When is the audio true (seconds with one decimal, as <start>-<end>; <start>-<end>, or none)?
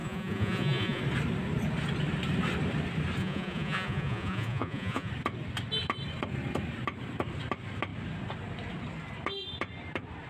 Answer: 1.0-3.2; 5.1-10.3